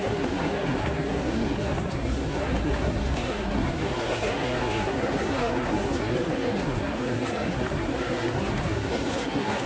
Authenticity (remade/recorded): remade